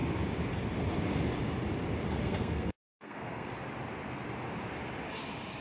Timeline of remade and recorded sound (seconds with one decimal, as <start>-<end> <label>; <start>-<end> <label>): 0.0-2.2 recorded; 2.2-3.5 remade; 3.5-5.6 recorded

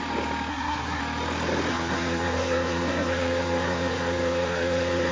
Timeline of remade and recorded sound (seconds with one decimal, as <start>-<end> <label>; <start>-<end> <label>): 0.0-0.5 recorded; 0.5-1.0 remade; 1.0-1.7 recorded; 1.7-5.1 remade